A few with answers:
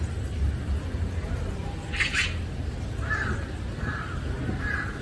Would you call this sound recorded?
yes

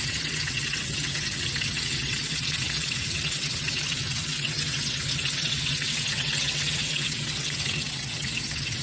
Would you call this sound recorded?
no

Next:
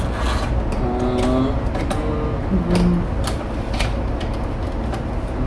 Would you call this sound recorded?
yes